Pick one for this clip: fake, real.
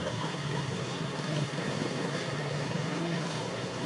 fake